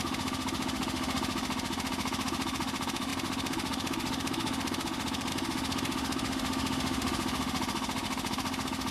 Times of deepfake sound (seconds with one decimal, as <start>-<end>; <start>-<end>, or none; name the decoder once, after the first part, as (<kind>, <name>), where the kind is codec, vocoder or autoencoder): 0.0-8.9 (autoencoder, DAC-VAE)